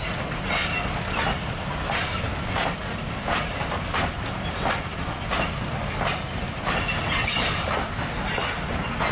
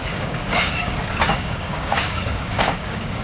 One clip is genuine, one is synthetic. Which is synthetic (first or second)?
second